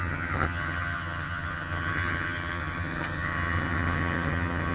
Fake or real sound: fake